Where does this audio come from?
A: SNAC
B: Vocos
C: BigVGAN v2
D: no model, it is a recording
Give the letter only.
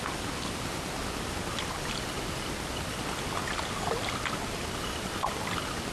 D